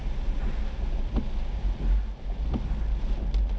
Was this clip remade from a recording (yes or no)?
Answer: no